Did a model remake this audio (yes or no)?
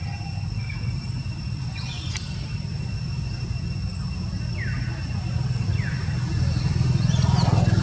no